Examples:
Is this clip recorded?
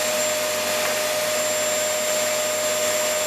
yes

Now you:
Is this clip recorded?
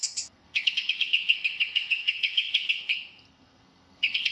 no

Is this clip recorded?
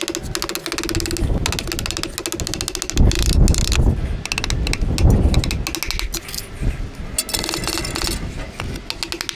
yes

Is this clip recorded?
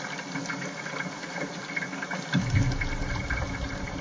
yes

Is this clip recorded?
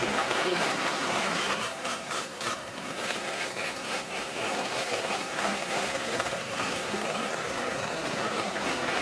no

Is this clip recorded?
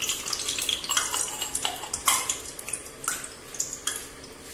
yes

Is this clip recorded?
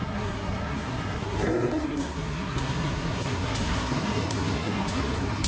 no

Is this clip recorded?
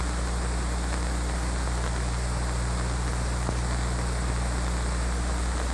yes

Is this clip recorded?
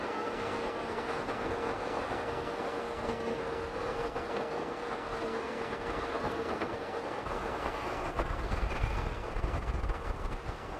no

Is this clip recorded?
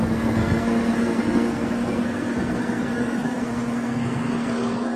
no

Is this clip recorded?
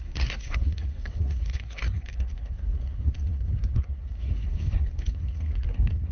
no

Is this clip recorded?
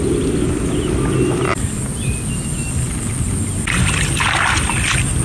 yes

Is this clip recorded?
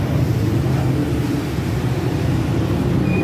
yes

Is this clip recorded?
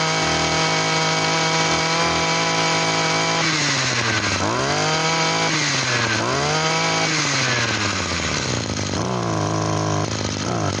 yes